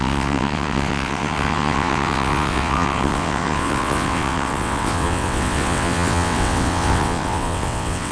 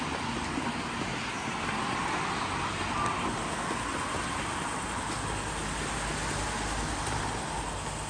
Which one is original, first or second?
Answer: second